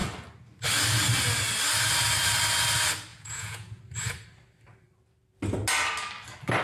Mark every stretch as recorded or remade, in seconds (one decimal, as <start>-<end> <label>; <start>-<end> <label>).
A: 0.0-3.1 recorded; 3.1-3.8 remade; 3.8-6.6 recorded